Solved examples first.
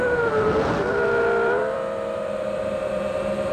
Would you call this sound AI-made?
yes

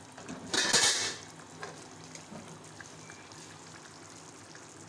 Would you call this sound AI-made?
no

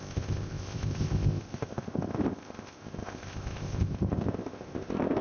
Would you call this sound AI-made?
yes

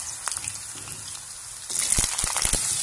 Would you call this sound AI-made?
no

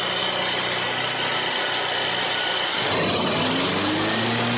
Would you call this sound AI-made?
no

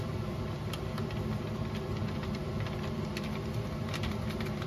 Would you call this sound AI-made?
no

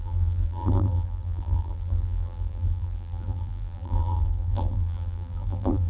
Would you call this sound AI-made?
yes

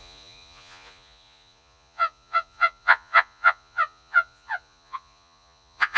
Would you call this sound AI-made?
yes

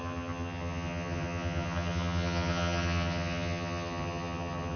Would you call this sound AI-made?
yes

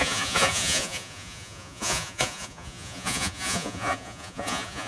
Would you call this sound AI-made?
yes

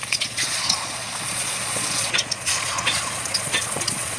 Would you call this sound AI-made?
yes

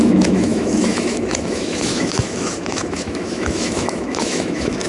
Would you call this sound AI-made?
yes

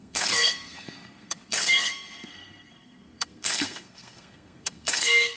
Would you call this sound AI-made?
yes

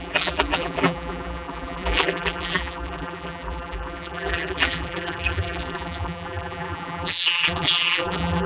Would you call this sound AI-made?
yes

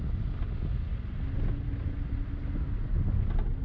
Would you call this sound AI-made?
no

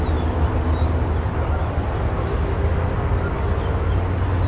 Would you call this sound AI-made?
no